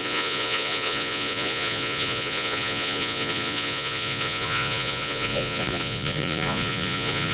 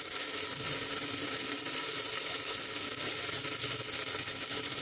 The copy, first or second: first